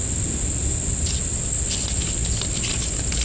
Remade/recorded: recorded